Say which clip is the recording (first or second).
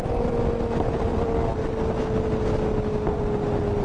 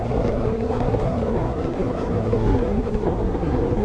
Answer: first